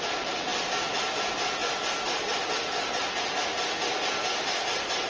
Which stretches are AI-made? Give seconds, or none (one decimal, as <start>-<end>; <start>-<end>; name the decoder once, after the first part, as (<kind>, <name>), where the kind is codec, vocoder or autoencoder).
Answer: 0.0-0.5 (vocoder, BigVGAN v2); 1.0-5.1